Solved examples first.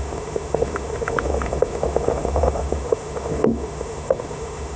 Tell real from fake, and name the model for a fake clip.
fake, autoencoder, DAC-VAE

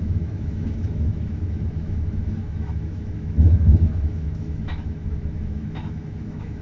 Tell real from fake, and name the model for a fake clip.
fake, autoencoder, DAC-VAE